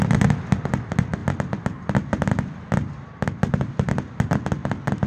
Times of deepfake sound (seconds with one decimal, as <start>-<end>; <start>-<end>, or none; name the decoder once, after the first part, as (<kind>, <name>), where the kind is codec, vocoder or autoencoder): none